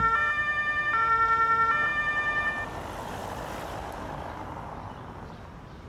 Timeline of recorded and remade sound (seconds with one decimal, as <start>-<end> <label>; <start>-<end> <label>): 0.0-5.9 recorded